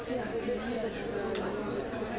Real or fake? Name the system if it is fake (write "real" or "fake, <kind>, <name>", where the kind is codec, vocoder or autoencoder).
real